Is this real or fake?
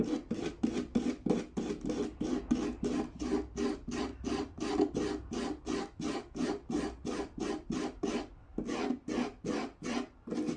real